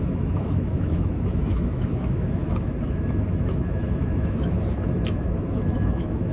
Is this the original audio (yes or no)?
no